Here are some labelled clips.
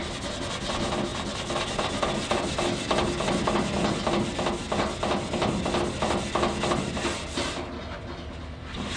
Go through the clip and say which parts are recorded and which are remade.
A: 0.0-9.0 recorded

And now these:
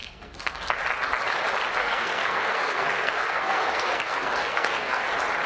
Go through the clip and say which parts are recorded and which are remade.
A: 0.0-0.8 remade; 0.8-1.8 recorded; 1.8-5.1 remade; 5.1-5.5 recorded

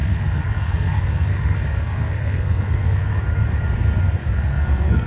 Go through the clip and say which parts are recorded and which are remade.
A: 0.0-3.1 remade; 3.1-4.2 recorded; 4.2-5.1 remade

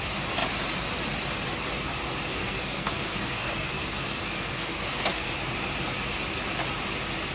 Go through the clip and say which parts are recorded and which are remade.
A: 0.0-2.4 recorded; 2.4-5.3 remade; 5.3-7.3 recorded

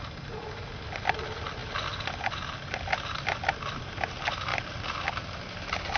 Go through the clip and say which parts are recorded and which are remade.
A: 0.0-6.0 recorded

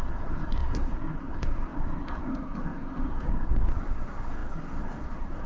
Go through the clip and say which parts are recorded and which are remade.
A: 0.0-5.5 remade

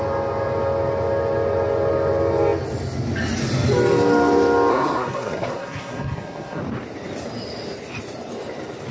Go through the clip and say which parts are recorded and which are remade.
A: 0.0-4.7 recorded; 4.7-6.6 remade; 6.6-8.9 recorded

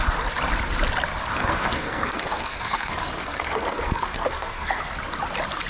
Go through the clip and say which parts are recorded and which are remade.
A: 0.0-1.4 recorded; 1.4-4.8 remade; 4.8-5.7 recorded